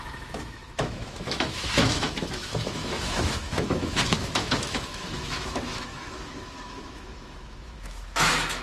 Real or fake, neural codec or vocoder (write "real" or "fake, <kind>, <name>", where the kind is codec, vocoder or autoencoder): fake, autoencoder, DAC-VAE